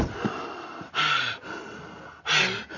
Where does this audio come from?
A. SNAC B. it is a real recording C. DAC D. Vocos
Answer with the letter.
B